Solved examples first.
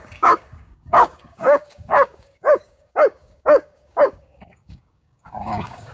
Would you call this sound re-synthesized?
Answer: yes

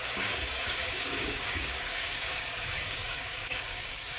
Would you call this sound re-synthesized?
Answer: yes